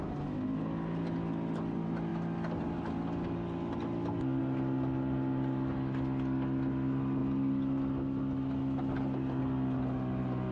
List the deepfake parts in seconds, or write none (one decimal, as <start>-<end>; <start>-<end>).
none